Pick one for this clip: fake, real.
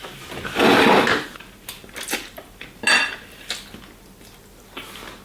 real